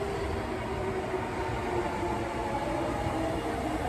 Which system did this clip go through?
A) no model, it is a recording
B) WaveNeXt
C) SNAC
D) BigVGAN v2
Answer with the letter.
A